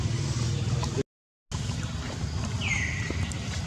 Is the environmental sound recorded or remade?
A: recorded